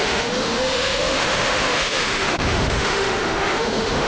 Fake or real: fake